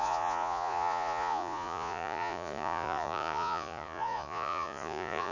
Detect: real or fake fake